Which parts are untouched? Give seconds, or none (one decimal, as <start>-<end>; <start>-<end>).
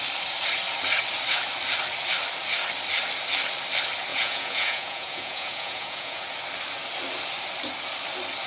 0.0-4.1; 6.2-8.5